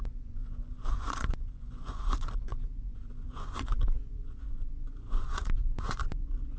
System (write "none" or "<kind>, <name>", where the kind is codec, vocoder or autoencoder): vocoder, Vocos